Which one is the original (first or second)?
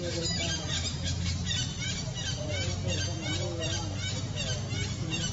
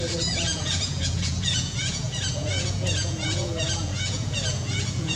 first